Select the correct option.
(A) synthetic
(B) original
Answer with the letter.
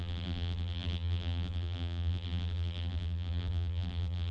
A